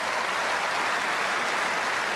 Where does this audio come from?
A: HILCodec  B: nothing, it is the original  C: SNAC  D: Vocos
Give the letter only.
B